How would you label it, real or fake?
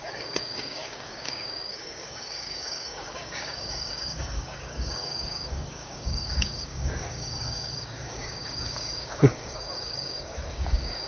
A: fake